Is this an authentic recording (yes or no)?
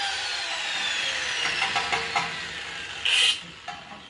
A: yes